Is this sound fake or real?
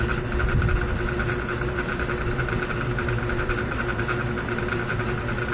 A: real